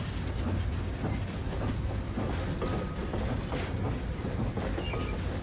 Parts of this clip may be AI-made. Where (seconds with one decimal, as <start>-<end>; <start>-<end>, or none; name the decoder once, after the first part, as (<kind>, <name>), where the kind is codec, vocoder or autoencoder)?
none

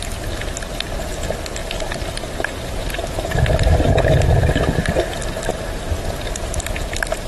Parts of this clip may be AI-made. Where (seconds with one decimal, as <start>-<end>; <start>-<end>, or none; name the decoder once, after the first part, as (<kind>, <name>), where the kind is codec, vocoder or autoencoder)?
1.6-4.2 (vocoder, BigVGAN v2); 5.5-6.2

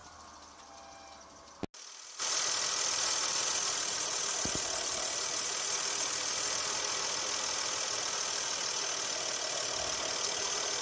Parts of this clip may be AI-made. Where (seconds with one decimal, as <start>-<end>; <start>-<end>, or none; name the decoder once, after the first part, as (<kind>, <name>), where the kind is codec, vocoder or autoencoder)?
0.0-1.1 (vocoder, BigVGAN v2)

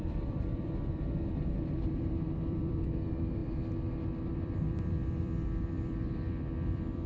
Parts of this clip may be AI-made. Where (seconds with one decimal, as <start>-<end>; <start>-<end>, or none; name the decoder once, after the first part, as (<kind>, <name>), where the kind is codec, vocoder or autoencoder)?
0.0-3.4 (vocoder, BigVGAN v2); 4.2-7.1